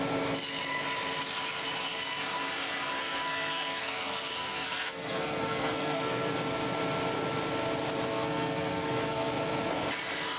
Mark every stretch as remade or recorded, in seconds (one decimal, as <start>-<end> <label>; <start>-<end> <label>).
0.0-3.0 recorded; 3.0-6.3 remade; 6.3-8.1 recorded; 8.1-9.3 remade; 9.3-10.4 recorded